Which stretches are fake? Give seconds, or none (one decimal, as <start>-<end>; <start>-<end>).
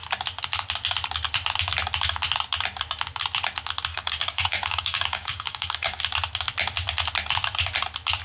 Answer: 3.9-6.0